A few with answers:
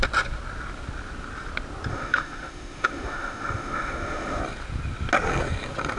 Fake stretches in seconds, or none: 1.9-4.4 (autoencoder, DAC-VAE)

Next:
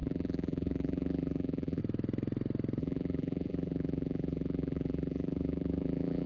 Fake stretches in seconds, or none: 0.0-1.8 (vocoder, BigVGAN v2); 2.8-6.3

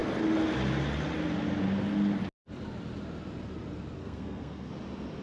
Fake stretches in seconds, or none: 4.0-4.7 (codec, SNAC)